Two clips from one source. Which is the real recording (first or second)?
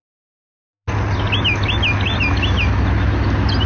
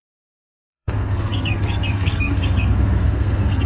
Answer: first